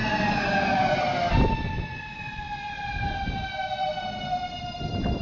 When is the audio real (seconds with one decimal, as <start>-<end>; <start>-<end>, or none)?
0.0-5.2